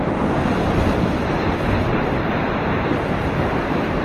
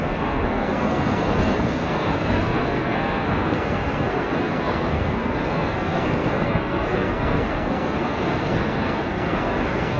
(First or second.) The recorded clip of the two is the first